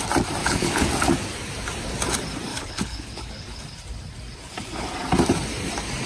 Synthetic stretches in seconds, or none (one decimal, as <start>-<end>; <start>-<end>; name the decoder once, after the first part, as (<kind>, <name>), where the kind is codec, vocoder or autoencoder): 0.4-0.9 (codec, HILCodec); 2.5-3.6